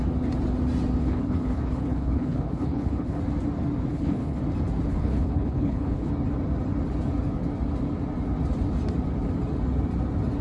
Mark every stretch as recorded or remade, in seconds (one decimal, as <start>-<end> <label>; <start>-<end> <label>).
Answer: 0.0-1.0 recorded; 1.0-3.2 remade; 3.2-3.9 recorded; 3.9-4.4 remade; 4.4-4.9 recorded; 4.9-6.1 remade; 6.1-10.4 recorded